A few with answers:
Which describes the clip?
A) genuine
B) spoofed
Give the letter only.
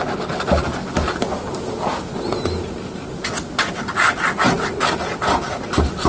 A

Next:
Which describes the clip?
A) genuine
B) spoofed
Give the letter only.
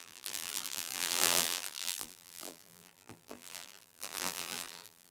B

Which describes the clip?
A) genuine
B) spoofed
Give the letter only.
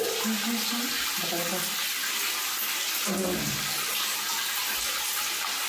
A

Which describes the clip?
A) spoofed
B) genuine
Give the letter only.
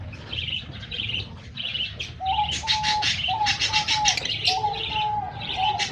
B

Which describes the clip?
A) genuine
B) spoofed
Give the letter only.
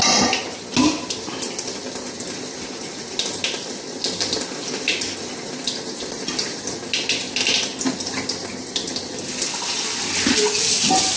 A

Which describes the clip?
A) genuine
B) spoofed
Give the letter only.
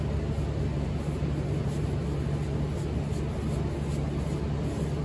A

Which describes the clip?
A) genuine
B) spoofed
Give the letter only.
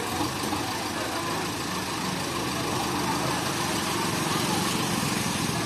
A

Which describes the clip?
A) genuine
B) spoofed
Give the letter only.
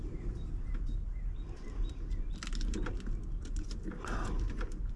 A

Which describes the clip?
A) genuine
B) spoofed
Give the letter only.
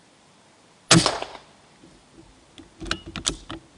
A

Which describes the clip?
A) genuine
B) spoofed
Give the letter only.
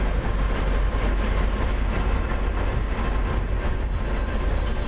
A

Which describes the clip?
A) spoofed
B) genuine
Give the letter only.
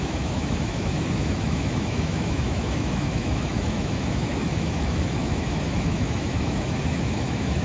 A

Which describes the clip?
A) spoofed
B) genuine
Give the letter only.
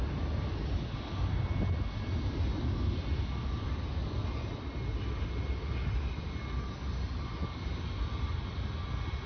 B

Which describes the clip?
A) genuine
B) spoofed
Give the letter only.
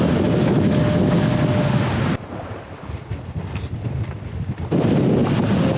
A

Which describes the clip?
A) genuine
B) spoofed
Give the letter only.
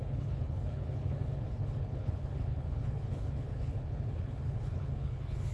B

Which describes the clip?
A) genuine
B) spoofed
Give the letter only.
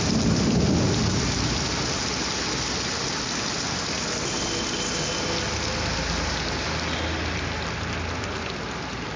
A